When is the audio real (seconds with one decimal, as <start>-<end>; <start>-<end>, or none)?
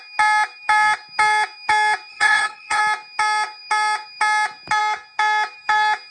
0.0-2.1; 2.8-6.1